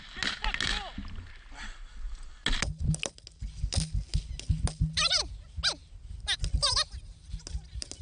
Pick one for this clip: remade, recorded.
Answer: recorded